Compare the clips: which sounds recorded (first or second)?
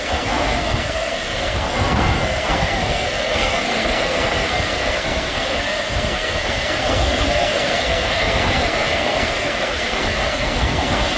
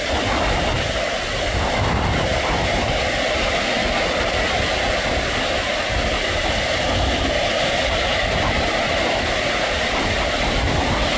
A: second